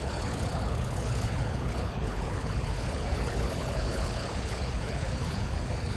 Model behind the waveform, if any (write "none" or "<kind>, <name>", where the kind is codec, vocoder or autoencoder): codec, HILCodec